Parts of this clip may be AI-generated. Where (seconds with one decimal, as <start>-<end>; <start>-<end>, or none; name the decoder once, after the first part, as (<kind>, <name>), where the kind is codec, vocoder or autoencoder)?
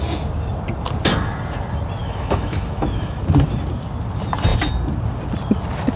2.0-3.2 (autoencoder, DAC-VAE)